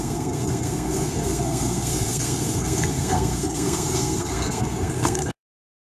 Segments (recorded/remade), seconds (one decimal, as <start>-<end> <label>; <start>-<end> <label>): 0.0-5.9 remade